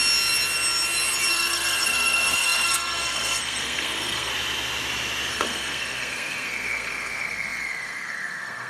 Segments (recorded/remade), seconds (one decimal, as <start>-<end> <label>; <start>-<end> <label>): 0.0-1.3 recorded; 1.3-4.3 remade; 4.3-5.3 recorded; 5.3-8.7 remade